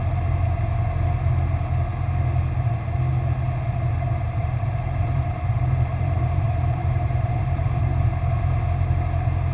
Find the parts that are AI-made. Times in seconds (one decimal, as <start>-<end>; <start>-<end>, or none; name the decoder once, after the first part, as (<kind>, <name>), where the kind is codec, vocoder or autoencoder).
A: 4.4-7.9 (vocoder, BigVGAN v2)

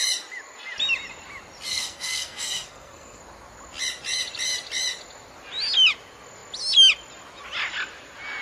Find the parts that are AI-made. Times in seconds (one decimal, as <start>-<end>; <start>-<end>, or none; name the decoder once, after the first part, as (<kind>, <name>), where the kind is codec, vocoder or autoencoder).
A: 1.7-3.2 (codec, SNAC)

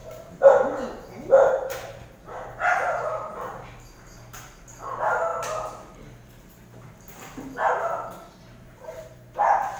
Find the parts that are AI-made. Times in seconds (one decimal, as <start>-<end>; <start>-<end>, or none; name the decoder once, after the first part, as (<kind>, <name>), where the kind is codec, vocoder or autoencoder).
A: 0.0-5.3 (vocoder, BigVGAN v2); 8.6-9.8

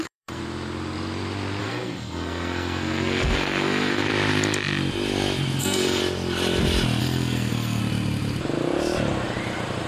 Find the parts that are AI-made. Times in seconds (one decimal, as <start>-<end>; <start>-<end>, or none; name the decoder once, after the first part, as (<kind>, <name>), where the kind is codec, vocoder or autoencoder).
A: 0.0-0.4 (codec, SNAC); 1.6-4.1; 5.6-6.0; 7.0-7.8

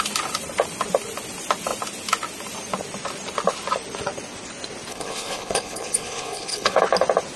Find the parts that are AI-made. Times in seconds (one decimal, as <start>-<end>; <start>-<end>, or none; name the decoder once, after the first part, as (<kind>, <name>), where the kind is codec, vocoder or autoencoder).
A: 4.9-6.8 (codec, HILCodec)

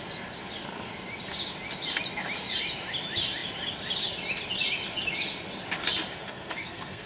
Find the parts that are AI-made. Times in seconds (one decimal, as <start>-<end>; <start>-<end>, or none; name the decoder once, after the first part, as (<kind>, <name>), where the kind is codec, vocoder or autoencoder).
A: 6.2-7.1 (codec, SNAC)

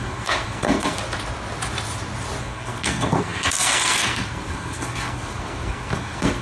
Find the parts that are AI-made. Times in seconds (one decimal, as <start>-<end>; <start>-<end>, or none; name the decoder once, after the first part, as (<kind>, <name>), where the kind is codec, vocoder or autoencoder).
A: 0.0-1.0 (codec, SNAC); 2.4-6.4

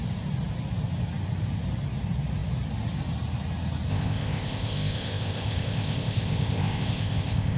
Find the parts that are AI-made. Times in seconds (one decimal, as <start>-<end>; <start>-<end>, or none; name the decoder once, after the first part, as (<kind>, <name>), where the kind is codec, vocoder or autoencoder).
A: 3.9-7.6 (codec, ZipCodec)